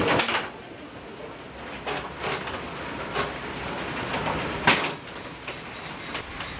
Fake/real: real